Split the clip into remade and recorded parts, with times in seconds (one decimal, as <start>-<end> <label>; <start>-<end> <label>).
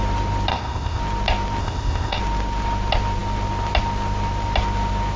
0.0-0.5 recorded; 0.5-1.0 remade; 1.0-1.6 recorded; 1.6-2.2 remade; 2.2-5.2 recorded